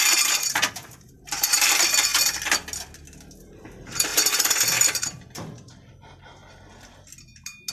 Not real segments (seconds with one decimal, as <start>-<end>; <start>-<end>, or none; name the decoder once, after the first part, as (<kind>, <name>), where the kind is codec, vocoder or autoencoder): 0.0-2.1 (vocoder, BigVGAN v2); 3.6-6.4

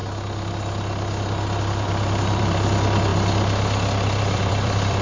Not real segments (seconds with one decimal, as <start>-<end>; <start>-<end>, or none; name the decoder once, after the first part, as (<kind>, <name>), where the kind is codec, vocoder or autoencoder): 1.6-3.1 (vocoder, BigVGAN v2); 4.2-5.0

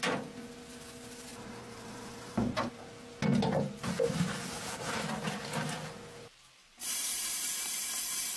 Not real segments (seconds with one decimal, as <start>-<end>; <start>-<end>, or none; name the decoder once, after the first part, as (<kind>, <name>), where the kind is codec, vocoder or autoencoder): 1.3-2.8 (vocoder, BigVGAN v2); 6.6-8.4

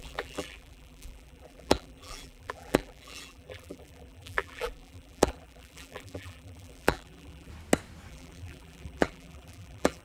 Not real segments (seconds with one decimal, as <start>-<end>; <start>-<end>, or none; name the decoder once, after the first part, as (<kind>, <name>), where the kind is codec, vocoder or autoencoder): 0.0-7.5 (vocoder, BigVGAN v2); 8.1-10.0

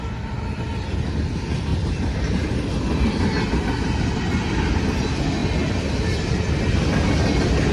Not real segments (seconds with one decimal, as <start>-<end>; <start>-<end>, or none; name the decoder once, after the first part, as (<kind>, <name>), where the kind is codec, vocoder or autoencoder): 1.7-2.2 (vocoder, BigVGAN v2)

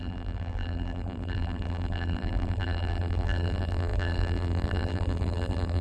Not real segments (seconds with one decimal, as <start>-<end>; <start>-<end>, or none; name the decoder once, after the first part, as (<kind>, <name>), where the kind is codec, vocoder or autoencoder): 0.0-5.8 (vocoder, BigVGAN v2)